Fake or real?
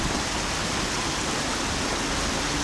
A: real